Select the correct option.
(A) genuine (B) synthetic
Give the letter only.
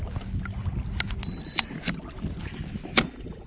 A